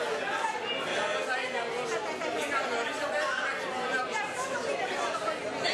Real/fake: real